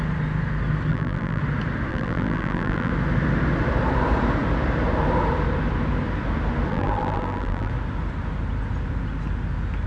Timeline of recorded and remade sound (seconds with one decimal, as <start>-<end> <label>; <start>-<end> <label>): 0.0-0.9 recorded; 0.9-1.4 remade; 1.4-1.9 recorded; 1.9-2.9 remade; 2.9-6.7 recorded; 6.7-7.7 remade; 7.7-9.9 recorded